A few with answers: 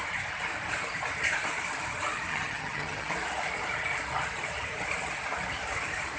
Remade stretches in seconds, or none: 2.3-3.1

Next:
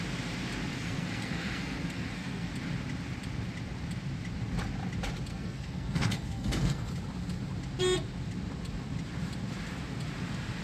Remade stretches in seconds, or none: 0.7-2.5; 5.3-6.9

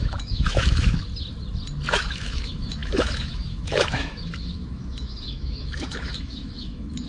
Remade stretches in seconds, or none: 0.0-1.0; 1.9-7.1

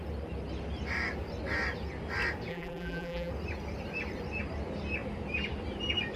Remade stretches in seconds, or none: 2.5-3.3

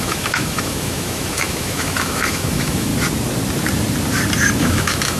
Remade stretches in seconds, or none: 0.0-2.9; 4.6-5.2

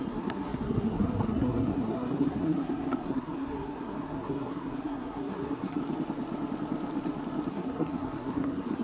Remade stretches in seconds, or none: 0.0-5.8; 7.5-8.8

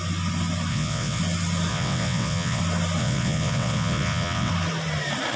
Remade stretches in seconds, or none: 0.7-1.2; 1.7-2.6; 3.0-4.5